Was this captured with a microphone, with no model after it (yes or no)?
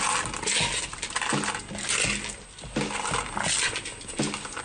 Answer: yes